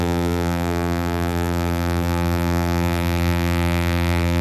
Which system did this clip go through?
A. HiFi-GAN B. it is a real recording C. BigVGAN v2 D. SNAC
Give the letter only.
C